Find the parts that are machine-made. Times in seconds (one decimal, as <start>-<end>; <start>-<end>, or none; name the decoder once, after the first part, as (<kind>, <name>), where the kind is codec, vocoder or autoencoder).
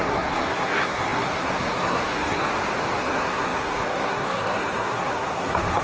0.0-2.5 (codec, SNAC); 3.0-5.8